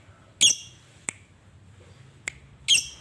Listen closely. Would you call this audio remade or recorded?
recorded